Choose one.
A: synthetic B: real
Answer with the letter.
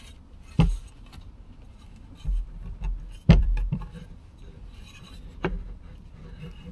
A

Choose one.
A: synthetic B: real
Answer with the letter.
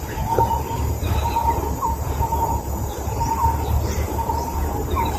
A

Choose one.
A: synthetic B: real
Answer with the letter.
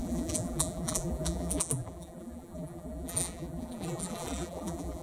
A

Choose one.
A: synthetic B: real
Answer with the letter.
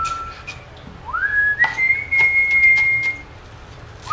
B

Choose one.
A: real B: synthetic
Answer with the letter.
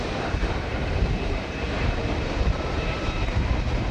B